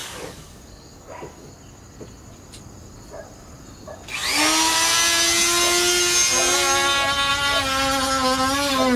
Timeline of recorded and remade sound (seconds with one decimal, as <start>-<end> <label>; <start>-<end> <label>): 0.0-1.5 remade; 1.5-9.0 recorded

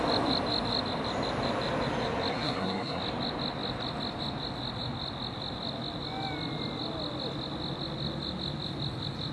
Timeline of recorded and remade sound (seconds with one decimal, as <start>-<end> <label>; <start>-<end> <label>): 0.0-2.3 recorded; 2.3-3.0 remade; 3.0-9.3 recorded

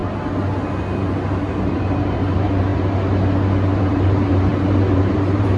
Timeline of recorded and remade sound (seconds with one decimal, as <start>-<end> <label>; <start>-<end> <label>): 0.0-1.7 recorded; 1.7-2.7 remade; 2.7-3.8 recorded; 3.8-5.6 remade